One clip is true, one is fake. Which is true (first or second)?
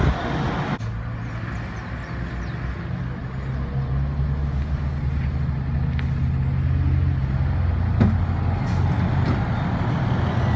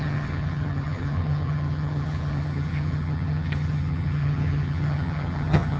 first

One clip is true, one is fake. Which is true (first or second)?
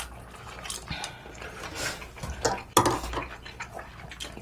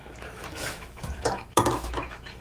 first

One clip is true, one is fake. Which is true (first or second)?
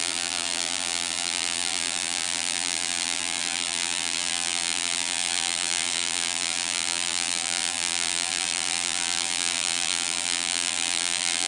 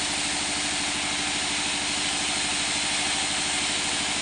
second